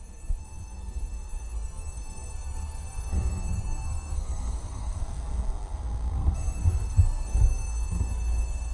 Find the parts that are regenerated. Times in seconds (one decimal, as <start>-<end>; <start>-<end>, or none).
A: 0.0-8.7